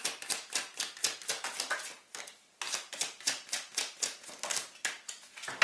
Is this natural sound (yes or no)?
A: yes